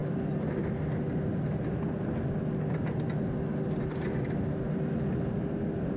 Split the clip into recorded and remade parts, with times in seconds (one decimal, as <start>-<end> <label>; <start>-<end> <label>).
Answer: 0.0-6.0 recorded

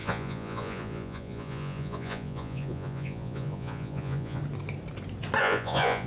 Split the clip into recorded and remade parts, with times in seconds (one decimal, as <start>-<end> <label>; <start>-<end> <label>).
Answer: 0.0-4.4 remade; 4.4-5.4 recorded; 5.4-6.1 remade

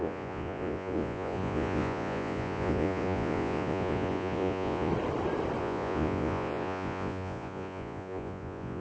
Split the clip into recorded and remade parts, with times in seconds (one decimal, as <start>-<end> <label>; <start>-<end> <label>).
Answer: 0.0-4.9 remade; 4.9-5.6 recorded; 5.6-8.8 remade

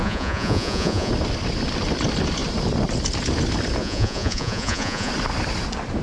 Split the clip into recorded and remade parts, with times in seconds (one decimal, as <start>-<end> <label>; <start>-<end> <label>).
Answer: 0.0-1.1 remade; 1.1-3.8 recorded; 3.8-5.1 remade; 5.1-6.0 recorded

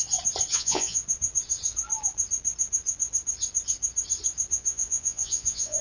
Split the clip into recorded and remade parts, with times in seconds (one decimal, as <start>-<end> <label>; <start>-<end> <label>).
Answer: 0.0-0.5 recorded; 0.5-1.0 remade; 1.0-4.5 recorded; 4.5-5.8 remade

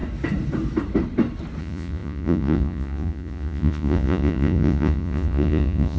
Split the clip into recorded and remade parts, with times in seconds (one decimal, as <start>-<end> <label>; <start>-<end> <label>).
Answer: 0.0-1.6 recorded; 1.6-6.0 remade